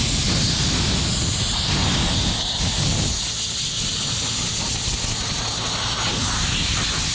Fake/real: real